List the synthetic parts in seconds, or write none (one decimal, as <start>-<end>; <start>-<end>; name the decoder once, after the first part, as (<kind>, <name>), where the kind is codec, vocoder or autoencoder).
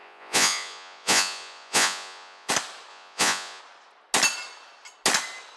0.0-2.5 (vocoder, Vocos); 2.9-3.6